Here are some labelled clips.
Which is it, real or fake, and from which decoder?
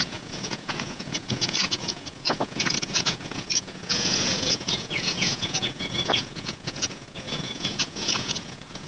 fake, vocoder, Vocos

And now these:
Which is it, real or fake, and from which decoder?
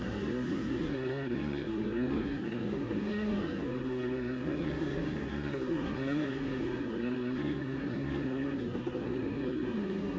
fake, codec, SNAC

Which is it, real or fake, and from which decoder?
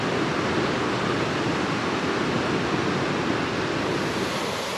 real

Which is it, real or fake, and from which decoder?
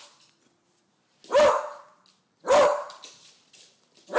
real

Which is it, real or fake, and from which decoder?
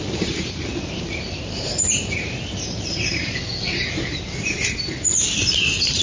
fake, vocoder, BigVGAN v2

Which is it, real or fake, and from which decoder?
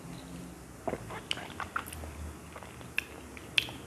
real